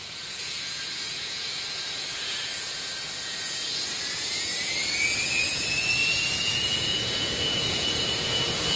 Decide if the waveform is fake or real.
fake